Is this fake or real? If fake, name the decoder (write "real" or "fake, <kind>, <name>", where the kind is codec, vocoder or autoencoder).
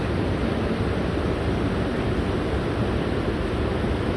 real